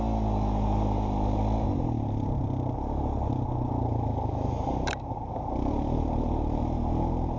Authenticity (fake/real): real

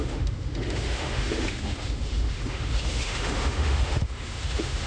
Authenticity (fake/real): fake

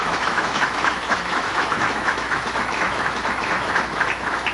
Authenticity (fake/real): fake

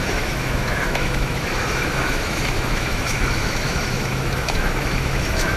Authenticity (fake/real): fake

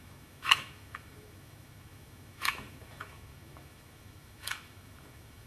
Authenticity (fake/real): fake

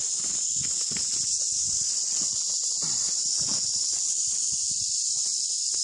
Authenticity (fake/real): real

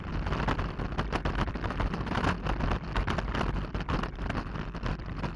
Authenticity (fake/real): real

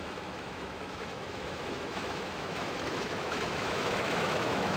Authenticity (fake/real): fake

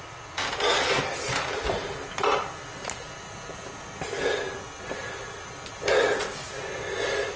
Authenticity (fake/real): real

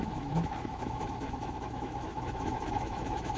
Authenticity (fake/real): fake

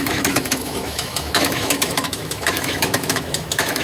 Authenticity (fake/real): fake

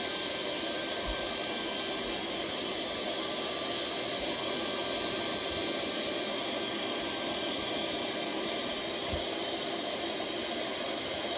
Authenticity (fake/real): real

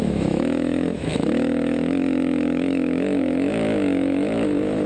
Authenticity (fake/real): fake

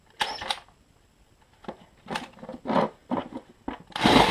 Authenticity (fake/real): real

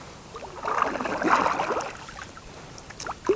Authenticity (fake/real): real